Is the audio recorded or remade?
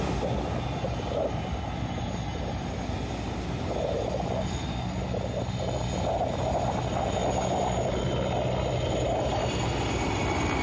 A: recorded